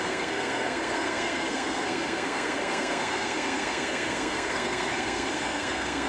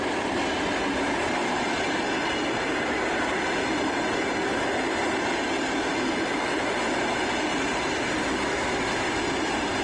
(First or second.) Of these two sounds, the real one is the second